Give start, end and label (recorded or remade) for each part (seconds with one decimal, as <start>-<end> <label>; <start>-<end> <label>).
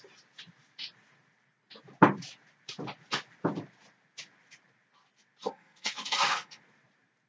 0.0-5.4 recorded; 5.4-6.6 remade; 6.6-7.3 recorded